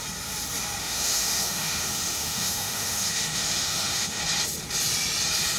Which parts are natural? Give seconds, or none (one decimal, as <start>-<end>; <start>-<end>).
0.0-0.8; 4.2-5.6